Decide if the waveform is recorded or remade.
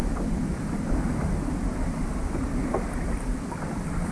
recorded